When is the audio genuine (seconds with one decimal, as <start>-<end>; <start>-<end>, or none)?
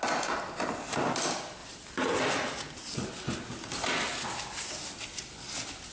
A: 0.0-5.9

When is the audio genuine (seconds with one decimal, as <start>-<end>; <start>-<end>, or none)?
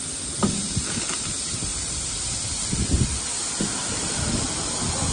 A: 0.0-5.1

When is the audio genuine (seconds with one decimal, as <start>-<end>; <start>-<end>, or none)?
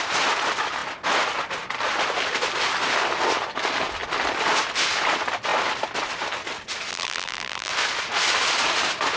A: 0.0-6.9; 7.7-9.2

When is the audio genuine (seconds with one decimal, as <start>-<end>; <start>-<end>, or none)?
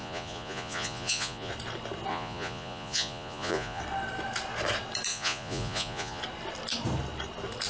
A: 1.5-2.1; 3.8-5.1; 6.2-7.7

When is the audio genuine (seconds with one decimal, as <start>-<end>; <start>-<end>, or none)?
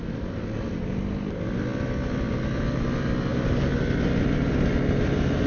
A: 0.0-5.5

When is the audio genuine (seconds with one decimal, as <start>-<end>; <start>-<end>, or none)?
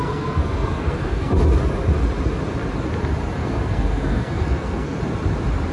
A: 1.3-3.4; 5.0-5.7